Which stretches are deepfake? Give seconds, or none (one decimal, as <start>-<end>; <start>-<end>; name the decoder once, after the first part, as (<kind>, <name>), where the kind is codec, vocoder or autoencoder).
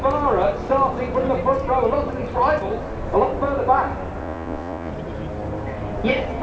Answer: 4.2-4.9 (vocoder, Vocos)